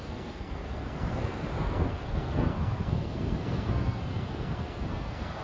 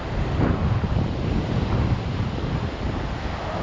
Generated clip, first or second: first